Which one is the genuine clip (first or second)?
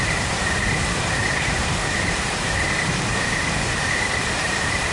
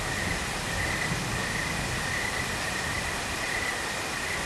second